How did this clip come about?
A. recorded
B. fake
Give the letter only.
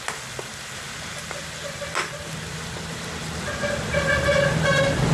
A